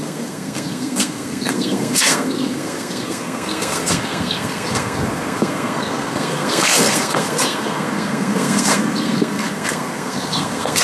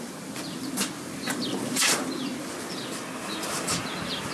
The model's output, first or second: first